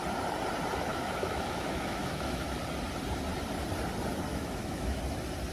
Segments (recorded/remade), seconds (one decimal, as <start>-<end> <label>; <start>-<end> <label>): 0.0-0.9 recorded; 0.9-2.6 remade; 2.6-4.3 recorded; 4.3-5.0 remade; 5.0-5.5 recorded